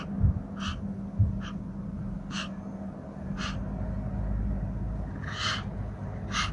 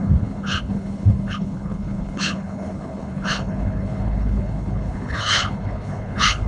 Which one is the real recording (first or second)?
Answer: first